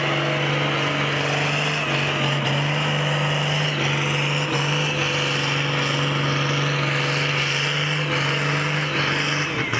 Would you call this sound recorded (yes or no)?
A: yes